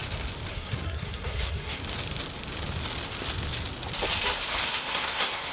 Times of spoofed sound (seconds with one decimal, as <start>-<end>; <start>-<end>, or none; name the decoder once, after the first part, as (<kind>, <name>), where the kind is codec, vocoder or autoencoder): 0.5-1.8 (codec, SNAC); 4.7-5.5